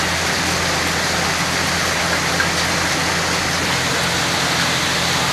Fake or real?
real